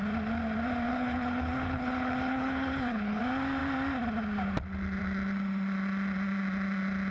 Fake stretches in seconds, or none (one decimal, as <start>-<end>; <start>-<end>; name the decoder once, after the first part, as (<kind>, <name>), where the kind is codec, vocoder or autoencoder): 0.9-3.2 (codec, HILCodec)